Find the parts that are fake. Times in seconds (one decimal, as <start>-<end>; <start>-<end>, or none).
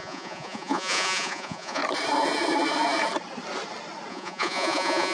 0.0-1.8; 4.1-5.1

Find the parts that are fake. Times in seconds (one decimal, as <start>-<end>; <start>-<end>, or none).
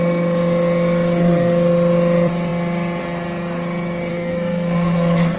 4.1-5.4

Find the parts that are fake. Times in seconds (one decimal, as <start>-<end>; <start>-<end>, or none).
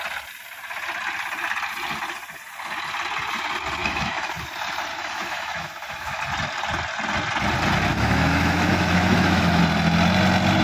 3.8-4.3; 4.9-6.2; 7.9-9.6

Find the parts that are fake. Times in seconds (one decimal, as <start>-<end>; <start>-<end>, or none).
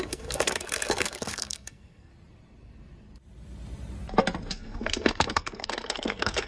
0.0-2.1; 4.5-6.5